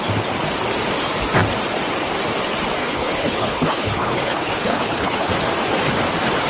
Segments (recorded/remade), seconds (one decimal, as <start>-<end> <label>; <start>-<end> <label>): 0.0-2.8 recorded; 2.8-5.3 remade; 5.3-6.5 recorded